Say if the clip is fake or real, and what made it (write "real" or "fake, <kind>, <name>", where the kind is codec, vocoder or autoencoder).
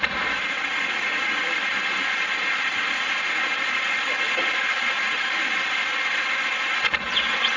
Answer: real